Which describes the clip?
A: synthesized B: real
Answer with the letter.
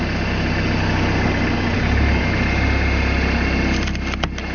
B